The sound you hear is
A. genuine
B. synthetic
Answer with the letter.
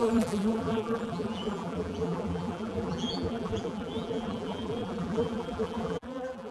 B